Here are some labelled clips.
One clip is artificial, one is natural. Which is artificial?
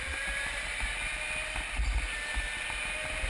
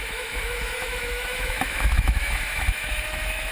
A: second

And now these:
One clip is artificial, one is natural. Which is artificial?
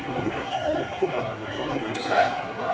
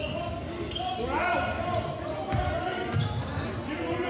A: first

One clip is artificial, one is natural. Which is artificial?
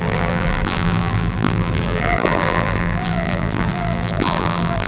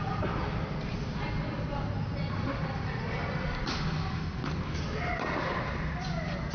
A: first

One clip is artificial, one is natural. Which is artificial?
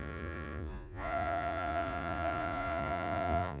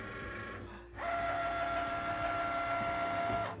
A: first